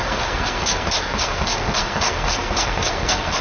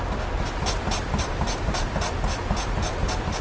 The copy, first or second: first